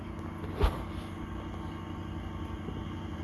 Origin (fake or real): real